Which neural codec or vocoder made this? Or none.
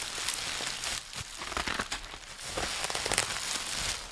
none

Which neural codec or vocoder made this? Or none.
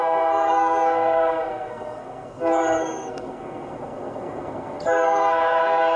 codec, SNAC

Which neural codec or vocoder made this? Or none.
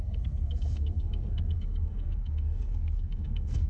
codec, SNAC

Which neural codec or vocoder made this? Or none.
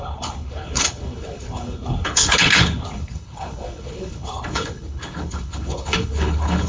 codec, HILCodec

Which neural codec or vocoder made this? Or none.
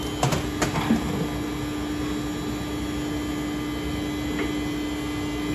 none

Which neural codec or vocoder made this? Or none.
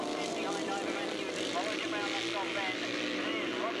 none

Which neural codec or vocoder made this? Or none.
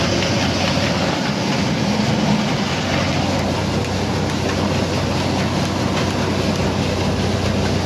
none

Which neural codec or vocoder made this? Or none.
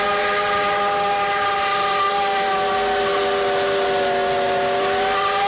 none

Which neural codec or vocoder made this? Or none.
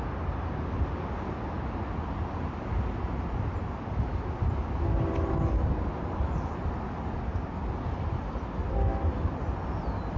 none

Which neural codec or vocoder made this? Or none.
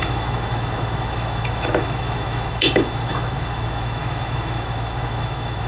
autoencoder, DAC-VAE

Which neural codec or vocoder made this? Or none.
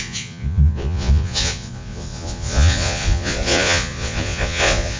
vocoder, Vocos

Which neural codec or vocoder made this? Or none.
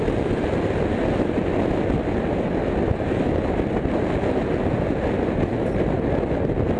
none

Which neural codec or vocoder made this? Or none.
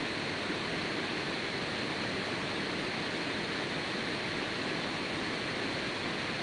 none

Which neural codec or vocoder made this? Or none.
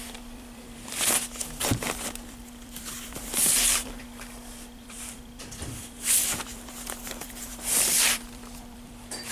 vocoder, BigVGAN v2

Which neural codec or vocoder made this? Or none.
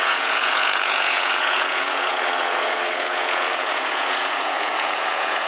vocoder, Vocos